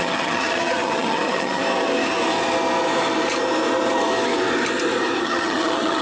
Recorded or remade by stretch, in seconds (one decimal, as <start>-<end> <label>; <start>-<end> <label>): 0.0-1.6 remade; 1.6-5.2 recorded; 5.2-6.0 remade